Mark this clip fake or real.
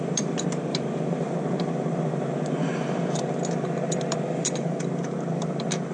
fake